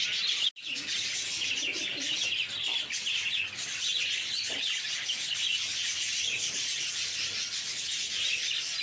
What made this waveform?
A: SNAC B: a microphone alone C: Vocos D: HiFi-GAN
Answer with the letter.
B